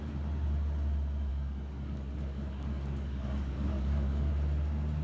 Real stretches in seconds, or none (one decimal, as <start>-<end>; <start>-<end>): 0.0-1.3; 4.3-5.0